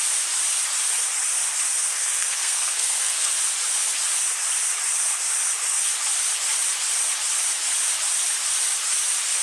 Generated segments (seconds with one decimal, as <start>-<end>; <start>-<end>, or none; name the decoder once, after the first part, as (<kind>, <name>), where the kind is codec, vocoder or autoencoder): 1.9-3.3 (codec, SNAC)